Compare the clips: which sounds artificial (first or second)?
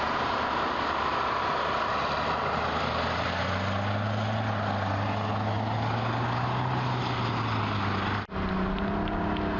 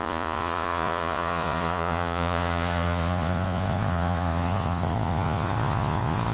second